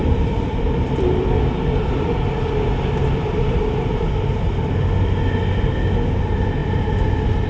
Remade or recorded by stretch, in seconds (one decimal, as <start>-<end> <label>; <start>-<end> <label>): 0.0-4.5 remade; 4.5-6.6 recorded; 6.6-7.5 remade